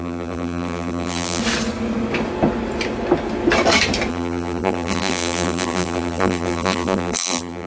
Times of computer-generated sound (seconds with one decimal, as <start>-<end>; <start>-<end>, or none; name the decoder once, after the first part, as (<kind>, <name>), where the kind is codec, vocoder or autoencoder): 0.0-1.4 (vocoder, BigVGAN v2); 4.1-7.7